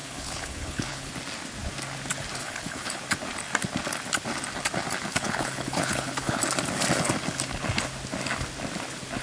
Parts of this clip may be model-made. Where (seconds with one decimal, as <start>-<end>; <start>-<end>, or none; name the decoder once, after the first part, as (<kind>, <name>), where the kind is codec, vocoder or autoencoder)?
0.0-1.1 (codec, HILCodec); 2.4-3.0; 5.1-6.4